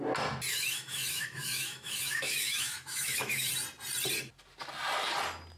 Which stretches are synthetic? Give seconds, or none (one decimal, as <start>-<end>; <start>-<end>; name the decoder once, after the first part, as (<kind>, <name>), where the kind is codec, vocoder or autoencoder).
0.5-3.5 (autoencoder, DAC-VAE)